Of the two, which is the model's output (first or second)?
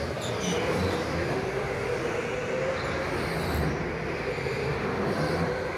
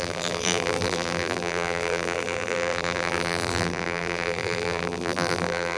second